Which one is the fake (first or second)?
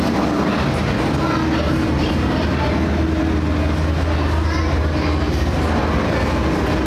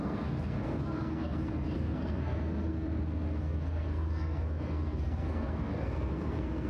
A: second